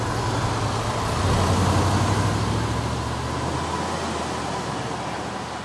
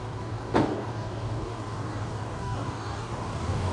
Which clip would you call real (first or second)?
first